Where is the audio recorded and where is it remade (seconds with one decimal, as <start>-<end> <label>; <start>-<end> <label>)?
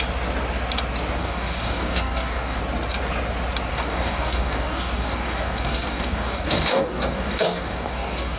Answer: 0.0-1.2 recorded; 1.2-2.6 remade; 2.6-3.7 recorded; 3.7-8.4 remade